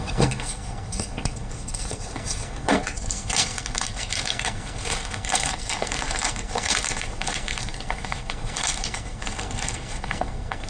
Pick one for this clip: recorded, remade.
remade